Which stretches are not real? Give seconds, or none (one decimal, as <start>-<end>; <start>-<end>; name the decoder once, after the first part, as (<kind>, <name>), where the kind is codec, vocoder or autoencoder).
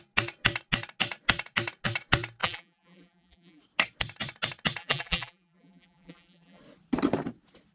2.4-3.6 (vocoder, BigVGAN v2); 4.8-6.6